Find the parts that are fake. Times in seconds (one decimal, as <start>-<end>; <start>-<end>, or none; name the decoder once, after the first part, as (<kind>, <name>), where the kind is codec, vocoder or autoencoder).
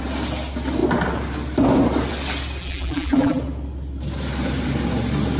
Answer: 2.6-3.4 (vocoder, BigVGAN v2)